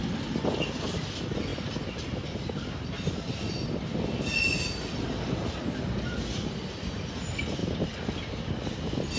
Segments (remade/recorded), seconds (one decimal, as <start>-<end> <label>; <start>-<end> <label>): 0.0-9.2 recorded